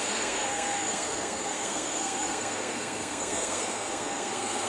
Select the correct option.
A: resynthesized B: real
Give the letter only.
A